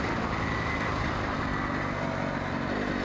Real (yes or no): yes